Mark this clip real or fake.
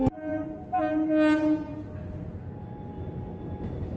real